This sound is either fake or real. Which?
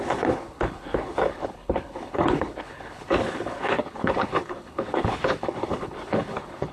fake